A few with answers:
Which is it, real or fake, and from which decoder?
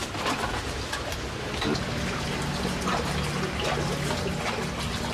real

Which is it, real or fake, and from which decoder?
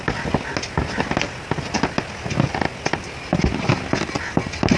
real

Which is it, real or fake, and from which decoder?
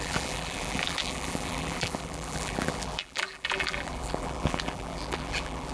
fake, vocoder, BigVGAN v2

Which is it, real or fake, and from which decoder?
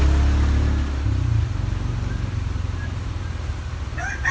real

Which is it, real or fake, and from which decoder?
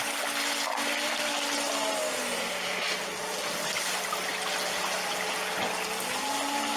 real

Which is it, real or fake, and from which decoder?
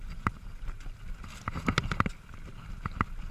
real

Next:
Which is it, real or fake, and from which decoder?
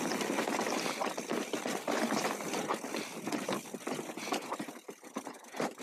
real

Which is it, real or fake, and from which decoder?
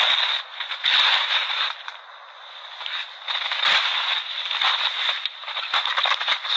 fake, vocoder, BigVGAN v2